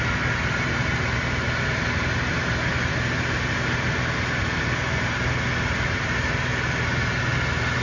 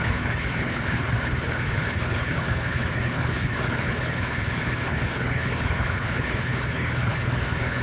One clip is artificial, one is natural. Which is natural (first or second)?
first